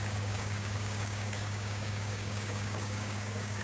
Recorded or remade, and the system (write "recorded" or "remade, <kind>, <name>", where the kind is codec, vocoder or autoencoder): remade, codec, DAC